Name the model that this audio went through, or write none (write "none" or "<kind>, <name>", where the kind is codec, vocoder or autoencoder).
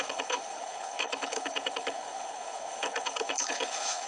codec, HILCodec